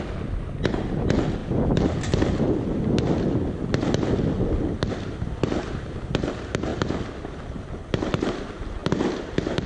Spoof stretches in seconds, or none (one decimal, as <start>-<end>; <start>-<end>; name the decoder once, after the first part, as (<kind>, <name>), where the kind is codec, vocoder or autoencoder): none